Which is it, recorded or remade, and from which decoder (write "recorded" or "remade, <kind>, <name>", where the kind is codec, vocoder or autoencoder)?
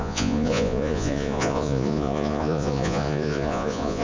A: remade, vocoder, Vocos